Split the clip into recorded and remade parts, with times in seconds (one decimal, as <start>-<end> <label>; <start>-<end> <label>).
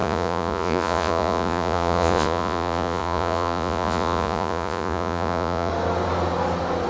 0.0-5.7 remade; 5.7-6.9 recorded